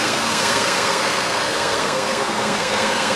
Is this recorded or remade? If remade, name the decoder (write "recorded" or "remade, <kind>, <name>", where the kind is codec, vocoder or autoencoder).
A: remade, codec, SNAC